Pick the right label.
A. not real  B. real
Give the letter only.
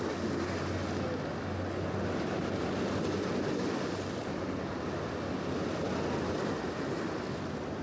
B